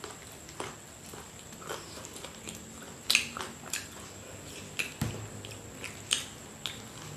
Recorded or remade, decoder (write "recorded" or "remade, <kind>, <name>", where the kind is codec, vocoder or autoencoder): recorded